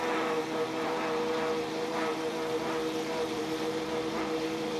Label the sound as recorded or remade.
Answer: remade